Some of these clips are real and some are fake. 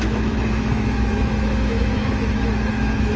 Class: fake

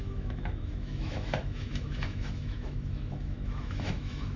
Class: fake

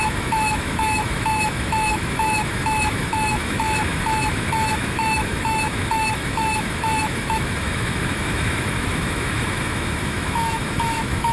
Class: fake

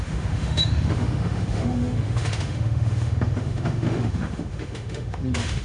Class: fake